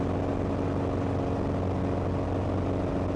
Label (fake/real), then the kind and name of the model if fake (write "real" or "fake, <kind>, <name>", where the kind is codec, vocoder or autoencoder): real